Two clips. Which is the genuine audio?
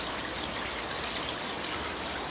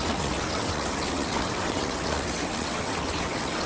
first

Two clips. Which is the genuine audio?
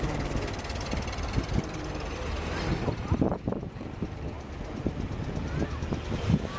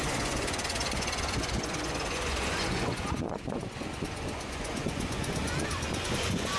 first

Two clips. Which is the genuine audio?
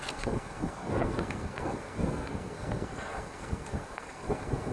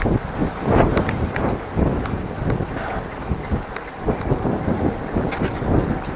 second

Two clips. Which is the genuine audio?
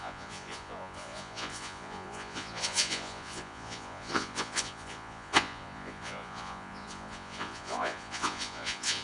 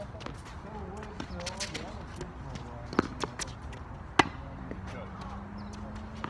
second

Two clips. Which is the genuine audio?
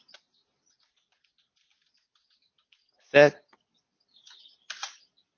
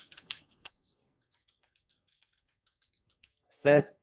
first